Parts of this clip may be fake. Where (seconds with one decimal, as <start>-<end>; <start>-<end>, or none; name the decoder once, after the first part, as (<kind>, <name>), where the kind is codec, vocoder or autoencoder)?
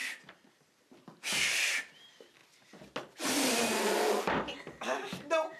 none